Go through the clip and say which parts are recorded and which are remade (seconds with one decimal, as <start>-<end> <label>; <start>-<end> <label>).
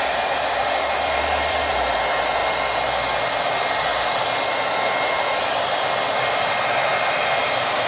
0.0-2.4 remade; 2.4-6.3 recorded; 6.3-6.9 remade; 6.9-7.4 recorded; 7.4-7.9 remade